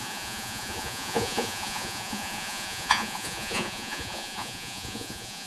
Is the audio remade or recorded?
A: remade